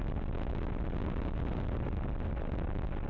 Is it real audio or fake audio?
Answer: real